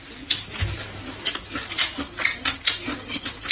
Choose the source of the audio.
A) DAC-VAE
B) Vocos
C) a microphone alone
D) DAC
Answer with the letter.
C